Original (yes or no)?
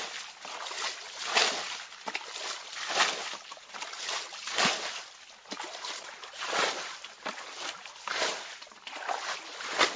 yes